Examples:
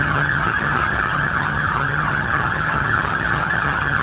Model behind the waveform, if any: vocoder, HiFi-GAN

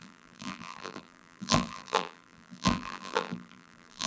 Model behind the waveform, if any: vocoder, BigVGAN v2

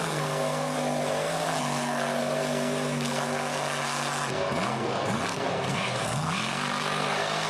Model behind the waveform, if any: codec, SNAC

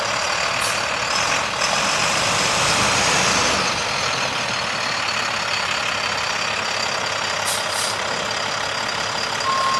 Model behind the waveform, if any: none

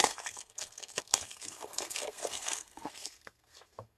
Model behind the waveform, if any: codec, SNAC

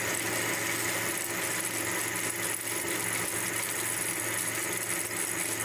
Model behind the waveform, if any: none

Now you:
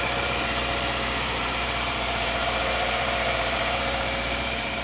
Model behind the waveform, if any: vocoder, BigVGAN v2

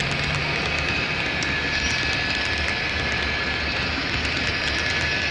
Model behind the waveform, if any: none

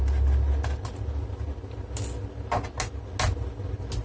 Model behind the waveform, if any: none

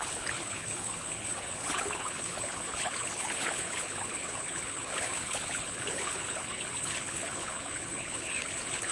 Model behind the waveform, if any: codec, HILCodec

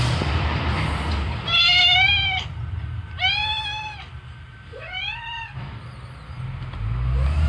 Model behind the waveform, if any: none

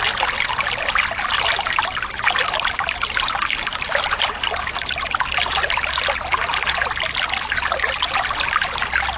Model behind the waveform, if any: none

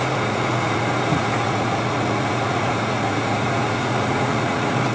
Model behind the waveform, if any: vocoder, Vocos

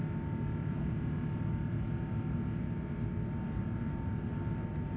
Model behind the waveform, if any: none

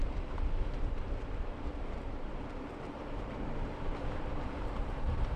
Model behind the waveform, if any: vocoder, BigVGAN v2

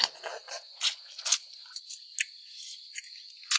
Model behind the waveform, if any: none